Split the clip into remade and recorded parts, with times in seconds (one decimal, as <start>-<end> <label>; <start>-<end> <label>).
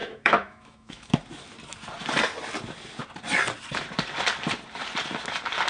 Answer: 0.0-1.1 remade; 1.1-5.7 recorded